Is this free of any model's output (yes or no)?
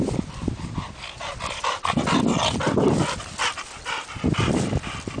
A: yes